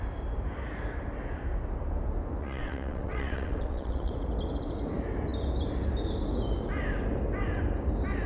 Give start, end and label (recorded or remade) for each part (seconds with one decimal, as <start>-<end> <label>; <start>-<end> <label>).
0.0-2.4 recorded; 2.4-4.1 remade; 4.1-8.3 recorded